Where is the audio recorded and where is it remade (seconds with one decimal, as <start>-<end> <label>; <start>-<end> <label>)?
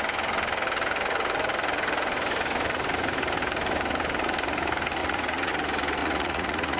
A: 0.0-5.0 recorded; 5.0-5.5 remade; 5.5-6.0 recorded; 6.0-6.8 remade